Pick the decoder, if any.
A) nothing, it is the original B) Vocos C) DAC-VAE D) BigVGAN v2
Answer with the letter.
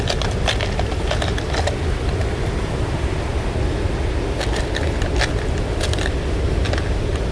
A